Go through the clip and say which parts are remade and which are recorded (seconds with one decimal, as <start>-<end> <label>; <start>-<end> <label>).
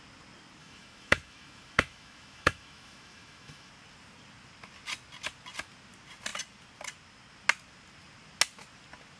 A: 0.0-0.6 recorded; 0.6-3.7 remade; 3.7-9.2 recorded